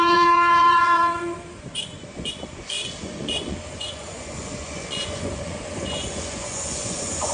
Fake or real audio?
fake